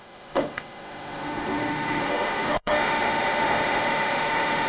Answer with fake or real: fake